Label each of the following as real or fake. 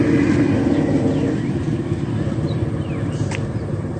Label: real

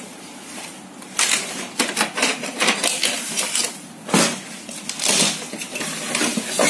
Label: real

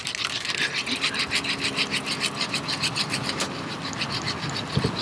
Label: real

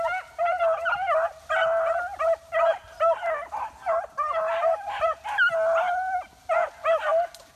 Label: real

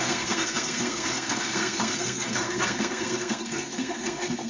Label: fake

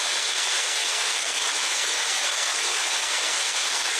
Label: fake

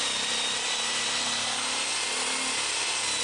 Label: real